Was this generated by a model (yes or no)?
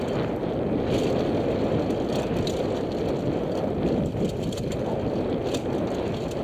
no